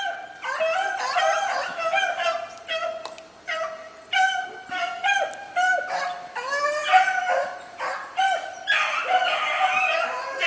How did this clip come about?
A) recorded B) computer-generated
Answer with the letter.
A